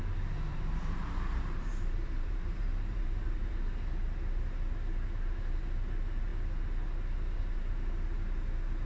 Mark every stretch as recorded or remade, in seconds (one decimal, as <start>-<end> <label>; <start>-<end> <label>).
0.0-0.5 recorded; 0.5-3.5 remade; 3.5-8.9 recorded